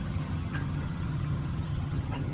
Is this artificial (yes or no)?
yes